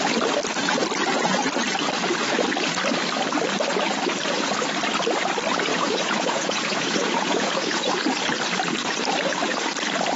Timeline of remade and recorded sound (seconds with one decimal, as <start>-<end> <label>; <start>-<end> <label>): 0.0-5.7 recorded; 5.7-7.9 remade; 7.9-10.2 recorded